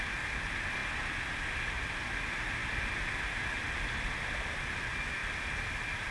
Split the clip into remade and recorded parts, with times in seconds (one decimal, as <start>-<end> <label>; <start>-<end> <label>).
0.0-6.1 recorded